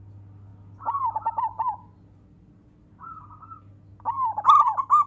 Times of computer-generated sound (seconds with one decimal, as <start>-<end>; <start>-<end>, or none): none